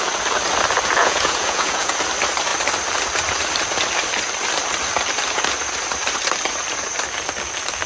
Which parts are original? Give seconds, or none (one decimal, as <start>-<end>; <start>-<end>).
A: 0.0-1.0; 1.9-7.9